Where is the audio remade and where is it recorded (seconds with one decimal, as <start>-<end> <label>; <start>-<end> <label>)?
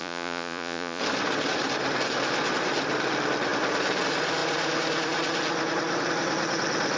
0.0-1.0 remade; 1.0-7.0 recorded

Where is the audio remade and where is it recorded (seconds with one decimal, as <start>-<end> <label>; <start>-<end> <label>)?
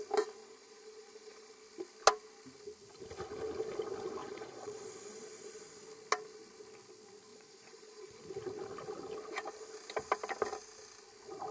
0.0-0.4 recorded; 0.4-1.5 remade; 1.5-4.2 recorded; 4.2-4.9 remade; 4.9-7.3 recorded; 7.3-8.2 remade; 8.2-11.5 recorded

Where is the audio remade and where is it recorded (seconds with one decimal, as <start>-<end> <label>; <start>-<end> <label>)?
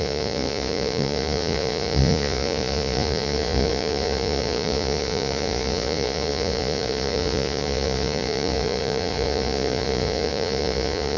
0.0-11.2 remade